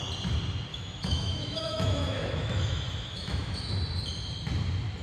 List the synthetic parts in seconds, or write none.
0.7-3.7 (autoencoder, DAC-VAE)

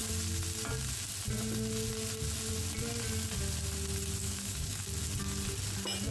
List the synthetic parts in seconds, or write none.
4.2-4.8 (codec, DAC)

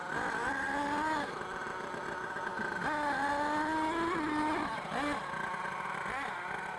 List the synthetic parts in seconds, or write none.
none

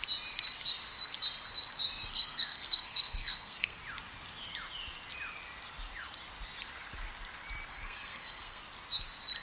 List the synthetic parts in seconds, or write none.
2.1-3.8 (codec, SNAC); 7.7-8.6